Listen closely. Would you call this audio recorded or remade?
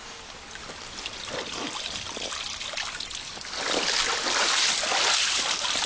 recorded